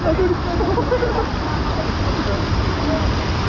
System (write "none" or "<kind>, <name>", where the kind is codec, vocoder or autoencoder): none